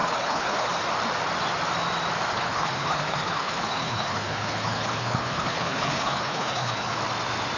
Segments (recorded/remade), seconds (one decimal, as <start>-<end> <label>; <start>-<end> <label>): 0.0-0.7 remade; 0.7-2.3 recorded; 2.3-6.9 remade; 6.9-7.6 recorded